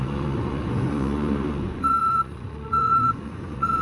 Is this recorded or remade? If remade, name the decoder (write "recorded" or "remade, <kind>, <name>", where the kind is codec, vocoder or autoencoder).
remade, vocoder, Vocos